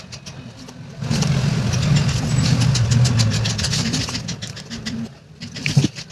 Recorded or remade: recorded